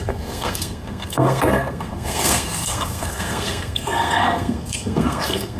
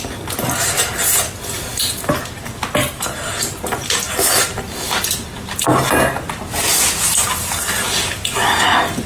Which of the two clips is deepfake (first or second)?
first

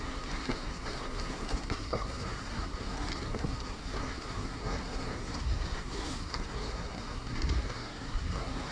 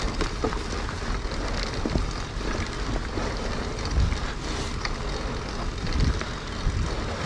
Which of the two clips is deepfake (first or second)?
first